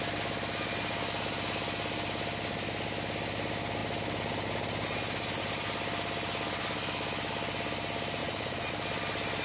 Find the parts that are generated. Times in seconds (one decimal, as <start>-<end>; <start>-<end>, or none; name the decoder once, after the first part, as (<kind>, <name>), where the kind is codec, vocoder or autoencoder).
8.2-8.7 (vocoder, Vocos)

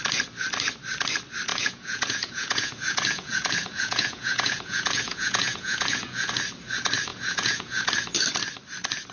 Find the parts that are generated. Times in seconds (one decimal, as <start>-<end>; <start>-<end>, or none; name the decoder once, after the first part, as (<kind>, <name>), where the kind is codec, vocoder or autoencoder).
1.5-6.3 (vocoder, Vocos); 7.1-7.9

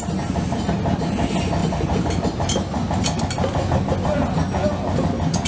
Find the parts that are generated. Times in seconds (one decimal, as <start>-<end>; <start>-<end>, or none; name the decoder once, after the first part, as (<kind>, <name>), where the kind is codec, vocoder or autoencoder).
none

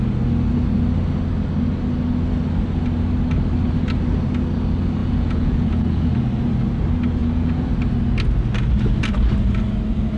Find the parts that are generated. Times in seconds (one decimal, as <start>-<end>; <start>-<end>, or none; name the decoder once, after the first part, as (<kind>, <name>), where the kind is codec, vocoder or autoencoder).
5.0-6.1 (vocoder, Vocos); 7.2-7.7

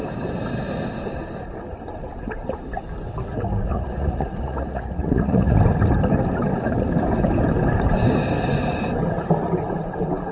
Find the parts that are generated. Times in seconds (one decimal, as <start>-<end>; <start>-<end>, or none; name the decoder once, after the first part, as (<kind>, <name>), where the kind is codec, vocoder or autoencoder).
3.7-5.6 (vocoder, Vocos)